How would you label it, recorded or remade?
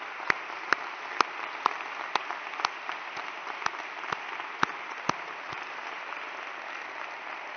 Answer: recorded